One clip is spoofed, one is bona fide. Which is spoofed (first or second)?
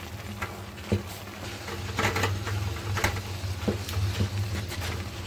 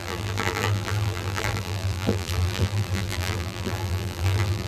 second